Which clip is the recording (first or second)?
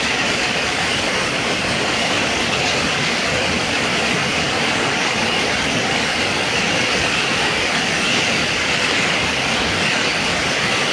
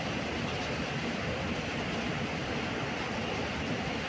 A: second